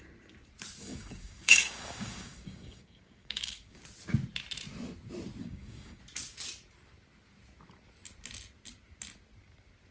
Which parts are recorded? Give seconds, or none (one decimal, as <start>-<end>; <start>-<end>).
0.0-0.8; 3.8-5.4; 6.0-9.9

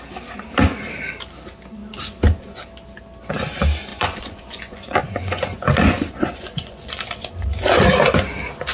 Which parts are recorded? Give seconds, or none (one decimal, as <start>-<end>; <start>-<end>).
0.0-3.9; 7.3-8.7

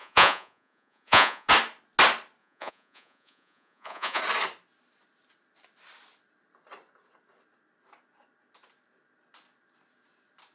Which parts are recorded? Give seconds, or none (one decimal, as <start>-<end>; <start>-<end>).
1.5-2.4; 4.2-10.5

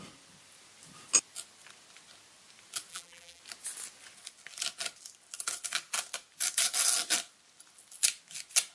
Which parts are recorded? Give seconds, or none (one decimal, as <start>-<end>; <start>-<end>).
0.0-2.9; 3.4-8.7

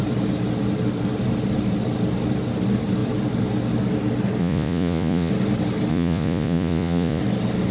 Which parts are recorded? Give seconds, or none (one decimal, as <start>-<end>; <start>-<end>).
0.0-4.4; 5.3-5.9; 7.2-7.7